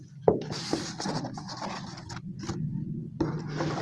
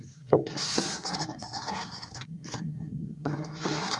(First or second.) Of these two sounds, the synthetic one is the second